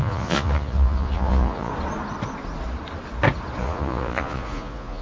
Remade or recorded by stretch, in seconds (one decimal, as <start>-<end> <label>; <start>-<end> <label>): 0.0-1.7 remade; 1.7-3.6 recorded; 3.6-5.0 remade